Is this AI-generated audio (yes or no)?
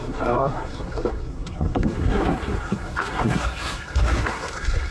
yes